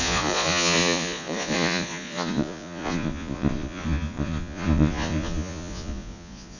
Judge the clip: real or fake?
fake